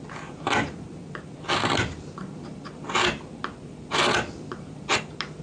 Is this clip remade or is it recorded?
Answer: recorded